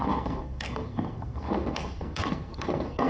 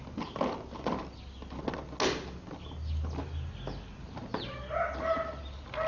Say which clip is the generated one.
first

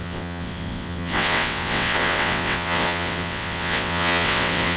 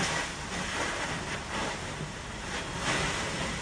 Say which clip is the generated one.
first